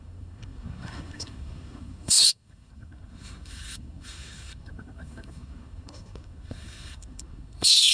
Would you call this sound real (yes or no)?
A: no